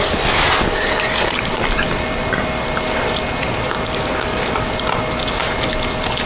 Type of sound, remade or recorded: remade